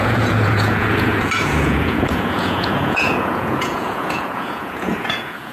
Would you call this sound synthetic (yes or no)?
yes